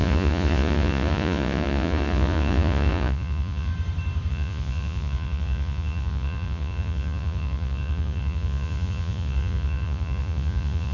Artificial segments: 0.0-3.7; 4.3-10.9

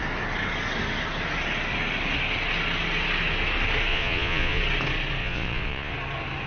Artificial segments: 3.9-4.6; 5.2-5.9

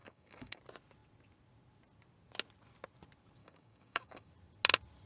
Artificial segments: 0.0-0.6; 3.4-4.3

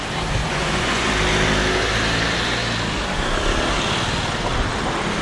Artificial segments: 0.4-1.1

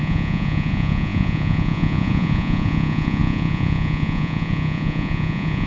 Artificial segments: 0.0-5.7

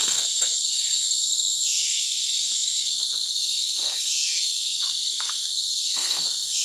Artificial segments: 0.0-6.6

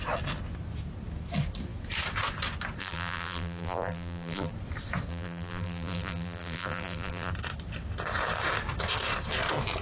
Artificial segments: 2.8-4.5; 5.1-7.3

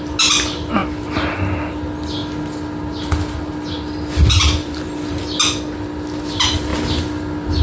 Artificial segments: 4.6-5.2